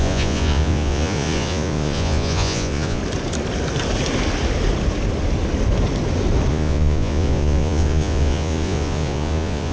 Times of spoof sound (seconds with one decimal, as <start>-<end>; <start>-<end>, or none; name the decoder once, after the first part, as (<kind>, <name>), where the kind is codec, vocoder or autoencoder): 0.0-3.0 (vocoder, Vocos); 6.5-9.7